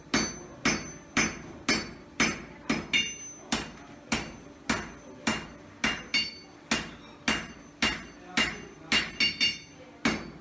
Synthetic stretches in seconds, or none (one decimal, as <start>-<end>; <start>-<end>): none